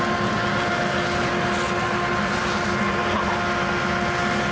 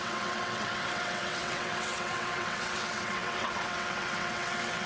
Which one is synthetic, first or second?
second